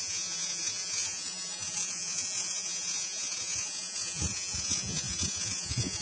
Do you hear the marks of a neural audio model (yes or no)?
yes